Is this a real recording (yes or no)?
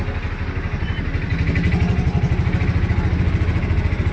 yes